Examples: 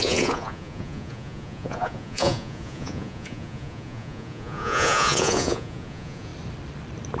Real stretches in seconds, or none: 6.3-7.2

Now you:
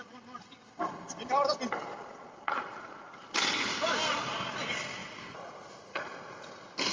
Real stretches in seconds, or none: 0.0-2.0; 3.3-5.0; 6.0-6.9

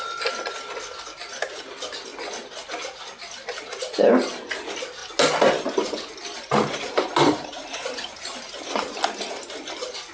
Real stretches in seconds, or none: 0.0-10.1

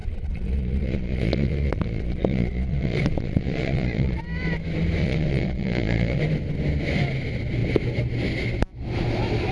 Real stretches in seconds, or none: 4.2-5.0; 6.2-9.5